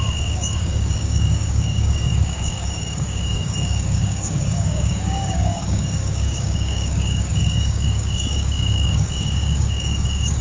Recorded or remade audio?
remade